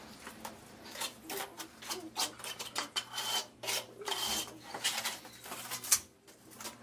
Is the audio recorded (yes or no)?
yes